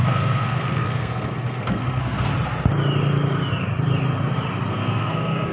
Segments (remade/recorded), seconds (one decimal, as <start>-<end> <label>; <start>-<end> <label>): 0.0-2.3 remade; 2.3-4.7 recorded; 4.7-5.5 remade